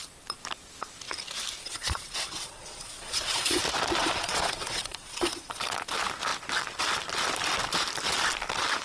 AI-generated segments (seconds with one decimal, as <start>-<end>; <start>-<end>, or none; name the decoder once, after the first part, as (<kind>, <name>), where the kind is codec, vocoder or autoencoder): 1.6-3.6 (vocoder, Vocos); 4.0-5.6